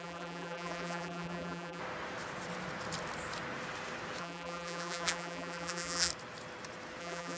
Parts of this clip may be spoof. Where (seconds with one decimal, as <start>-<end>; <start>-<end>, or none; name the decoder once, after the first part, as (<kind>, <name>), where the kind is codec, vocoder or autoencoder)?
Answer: 0.0-1.8 (vocoder, BigVGAN v2); 4.2-6.1; 7.0-7.4